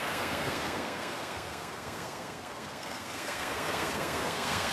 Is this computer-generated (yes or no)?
yes